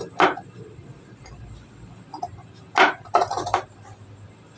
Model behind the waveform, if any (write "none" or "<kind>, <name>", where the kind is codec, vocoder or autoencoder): none